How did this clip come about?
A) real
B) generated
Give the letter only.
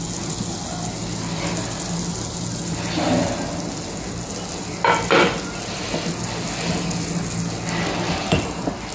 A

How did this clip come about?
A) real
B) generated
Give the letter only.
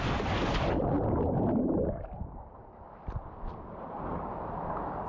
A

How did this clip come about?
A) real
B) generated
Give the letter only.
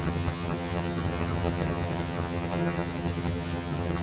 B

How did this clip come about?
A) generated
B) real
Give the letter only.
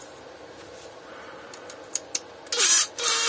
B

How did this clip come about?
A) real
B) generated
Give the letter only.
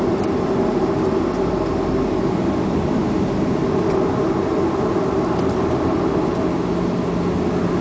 A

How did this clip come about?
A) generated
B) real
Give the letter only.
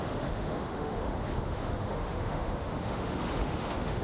A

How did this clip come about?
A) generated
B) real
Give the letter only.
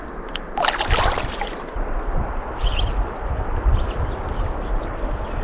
B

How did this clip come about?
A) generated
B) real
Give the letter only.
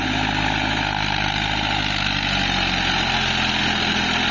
B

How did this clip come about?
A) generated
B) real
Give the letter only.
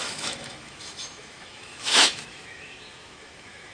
A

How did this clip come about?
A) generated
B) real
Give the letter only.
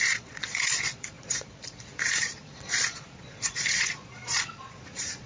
A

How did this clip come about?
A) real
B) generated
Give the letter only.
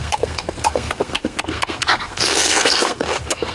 B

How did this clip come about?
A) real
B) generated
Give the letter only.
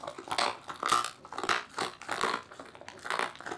A